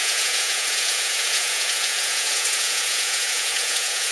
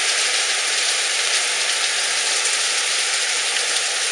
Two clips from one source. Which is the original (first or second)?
second